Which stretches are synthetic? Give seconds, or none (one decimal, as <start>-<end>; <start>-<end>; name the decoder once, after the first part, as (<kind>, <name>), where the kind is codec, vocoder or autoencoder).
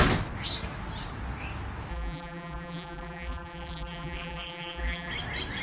1.9-5.1 (vocoder, BigVGAN v2)